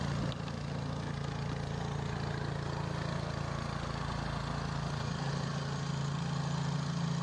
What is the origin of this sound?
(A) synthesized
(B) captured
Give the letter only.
B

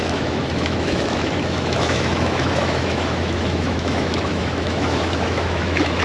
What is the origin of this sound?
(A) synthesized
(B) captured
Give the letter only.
A